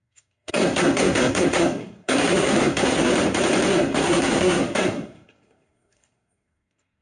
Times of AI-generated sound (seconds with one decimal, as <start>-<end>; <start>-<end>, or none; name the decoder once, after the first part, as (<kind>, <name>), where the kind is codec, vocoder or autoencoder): 0.0-3.1 (codec, SNAC); 3.7-7.0